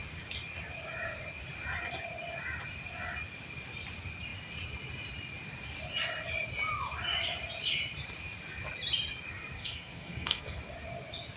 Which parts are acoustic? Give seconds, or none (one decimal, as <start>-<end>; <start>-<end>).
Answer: 0.0-9.6; 10.6-11.4